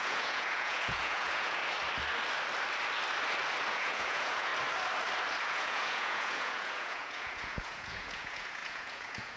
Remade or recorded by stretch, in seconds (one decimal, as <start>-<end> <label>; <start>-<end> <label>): 0.0-1.6 remade; 1.6-3.7 recorded; 3.7-4.5 remade; 4.5-5.4 recorded; 5.4-9.4 remade